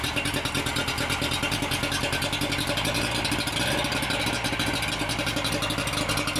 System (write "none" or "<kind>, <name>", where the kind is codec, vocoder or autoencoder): none